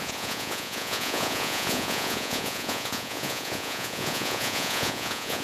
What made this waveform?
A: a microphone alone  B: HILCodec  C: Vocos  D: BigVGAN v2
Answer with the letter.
C